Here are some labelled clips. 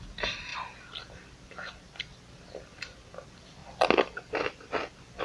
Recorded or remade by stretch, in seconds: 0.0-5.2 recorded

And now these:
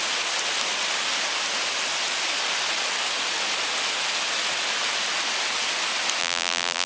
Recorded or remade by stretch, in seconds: 0.0-6.2 recorded; 6.2-6.9 remade

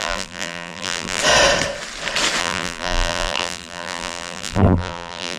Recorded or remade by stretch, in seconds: 0.0-1.2 remade; 1.2-2.4 recorded; 2.4-5.4 remade

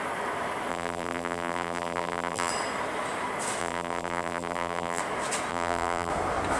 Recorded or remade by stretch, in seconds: 0.0-0.7 recorded; 0.7-2.5 remade; 2.5-3.6 recorded; 3.6-5.0 remade; 5.0-5.5 recorded; 5.5-6.1 remade; 6.1-6.6 recorded